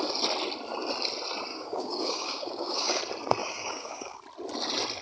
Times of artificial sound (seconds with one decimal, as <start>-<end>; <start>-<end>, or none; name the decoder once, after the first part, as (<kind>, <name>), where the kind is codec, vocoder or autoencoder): 1.5-3.0 (codec, DAC); 3.4-4.2